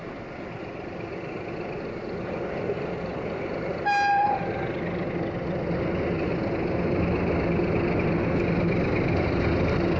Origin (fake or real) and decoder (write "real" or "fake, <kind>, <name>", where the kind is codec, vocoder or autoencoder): real